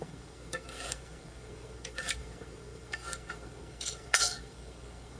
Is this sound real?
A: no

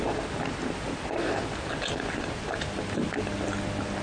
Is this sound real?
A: yes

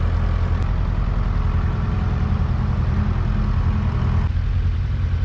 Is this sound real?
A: yes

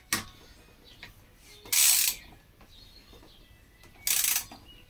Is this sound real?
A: yes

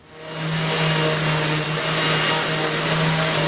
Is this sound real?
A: yes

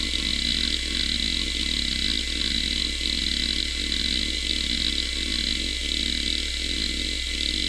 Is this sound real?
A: yes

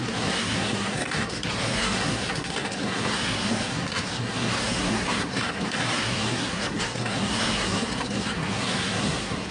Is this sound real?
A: no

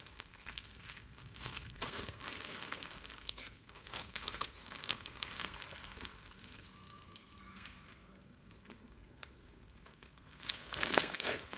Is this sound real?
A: no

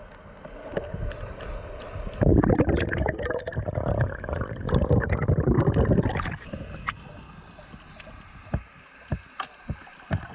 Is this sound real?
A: yes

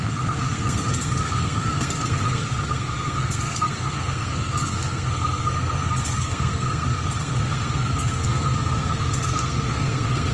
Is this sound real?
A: no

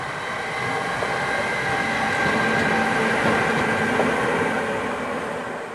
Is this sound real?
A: yes